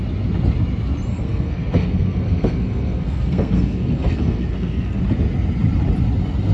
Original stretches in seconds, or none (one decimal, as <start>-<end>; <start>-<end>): 0.0-1.1; 5.0-6.5